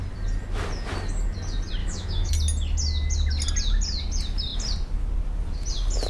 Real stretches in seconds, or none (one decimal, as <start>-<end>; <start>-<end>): 0.0-1.8; 2.3-6.1